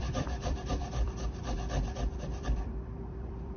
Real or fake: fake